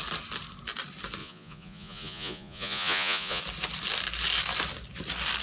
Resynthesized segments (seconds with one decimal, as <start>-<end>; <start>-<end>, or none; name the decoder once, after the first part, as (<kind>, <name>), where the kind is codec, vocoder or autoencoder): 1.2-3.4 (vocoder, Vocos)

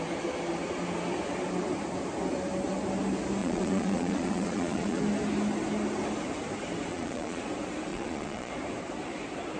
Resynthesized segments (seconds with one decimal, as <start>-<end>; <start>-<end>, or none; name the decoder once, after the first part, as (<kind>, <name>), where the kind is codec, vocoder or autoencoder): 3.4-5.0 (vocoder, Vocos); 6.9-7.4; 7.9-8.5

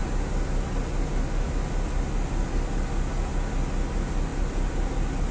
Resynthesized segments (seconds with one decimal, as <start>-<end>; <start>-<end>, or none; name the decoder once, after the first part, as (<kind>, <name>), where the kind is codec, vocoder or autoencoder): none

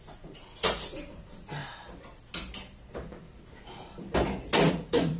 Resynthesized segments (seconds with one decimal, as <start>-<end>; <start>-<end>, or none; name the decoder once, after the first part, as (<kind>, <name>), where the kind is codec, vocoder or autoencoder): 0.0-1.6 (vocoder, Vocos); 4.7-5.2

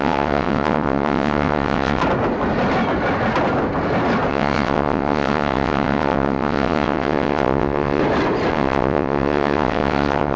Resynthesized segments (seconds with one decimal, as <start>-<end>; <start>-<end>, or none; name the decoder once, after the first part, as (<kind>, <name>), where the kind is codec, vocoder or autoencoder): 0.0-2.0 (vocoder, WaveNeXt); 4.3-8.0; 8.5-10.4